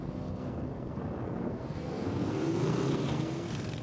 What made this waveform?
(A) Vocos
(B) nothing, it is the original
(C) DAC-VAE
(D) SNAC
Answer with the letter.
D